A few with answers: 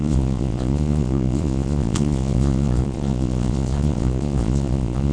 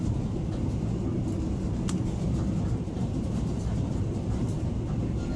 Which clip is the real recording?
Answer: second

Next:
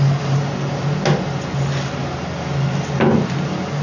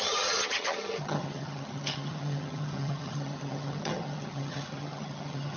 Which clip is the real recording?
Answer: first